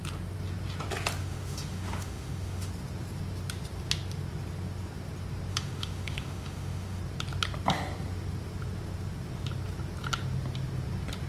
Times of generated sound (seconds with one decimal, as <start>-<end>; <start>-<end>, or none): 1.2-2.7; 5.5-7.0